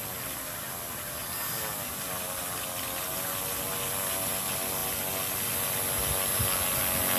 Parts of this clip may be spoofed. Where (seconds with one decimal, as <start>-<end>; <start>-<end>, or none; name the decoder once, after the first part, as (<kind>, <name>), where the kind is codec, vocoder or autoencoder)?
none